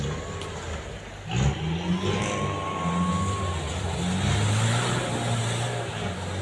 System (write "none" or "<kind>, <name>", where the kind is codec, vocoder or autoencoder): none